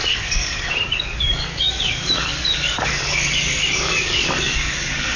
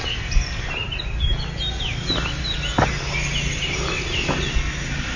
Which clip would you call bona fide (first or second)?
second